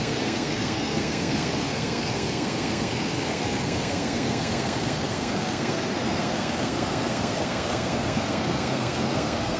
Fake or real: fake